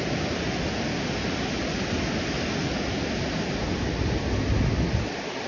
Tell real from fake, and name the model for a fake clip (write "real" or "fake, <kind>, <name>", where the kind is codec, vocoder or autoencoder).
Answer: real